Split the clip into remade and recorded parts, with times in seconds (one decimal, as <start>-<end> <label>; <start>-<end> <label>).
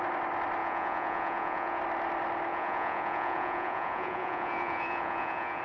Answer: 0.0-0.6 recorded; 0.6-1.8 remade; 1.8-2.5 recorded; 2.5-5.6 remade